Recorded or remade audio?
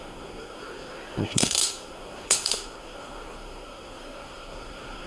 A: remade